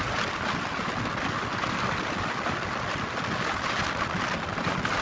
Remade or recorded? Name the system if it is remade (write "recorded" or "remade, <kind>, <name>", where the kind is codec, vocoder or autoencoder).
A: recorded